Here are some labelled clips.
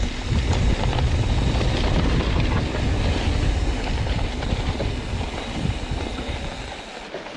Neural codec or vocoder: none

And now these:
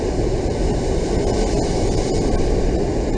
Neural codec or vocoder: vocoder, BigVGAN v2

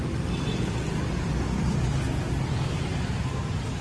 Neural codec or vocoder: none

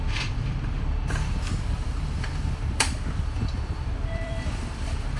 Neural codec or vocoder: vocoder, BigVGAN v2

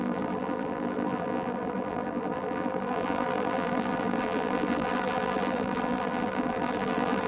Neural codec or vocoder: vocoder, BigVGAN v2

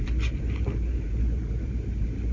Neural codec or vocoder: vocoder, BigVGAN v2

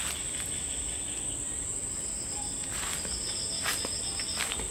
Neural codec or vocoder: none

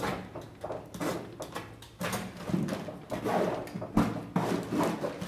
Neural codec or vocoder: none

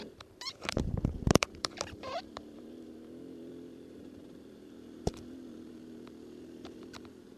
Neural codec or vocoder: vocoder, BigVGAN v2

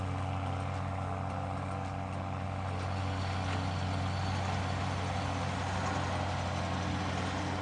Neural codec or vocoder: none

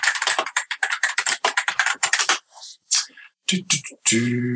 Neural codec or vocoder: vocoder, BigVGAN v2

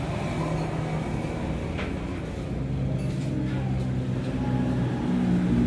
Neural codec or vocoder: none